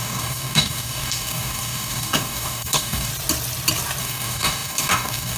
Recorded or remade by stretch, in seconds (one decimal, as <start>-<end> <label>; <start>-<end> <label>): 0.0-3.1 remade; 3.1-4.0 recorded; 4.0-5.4 remade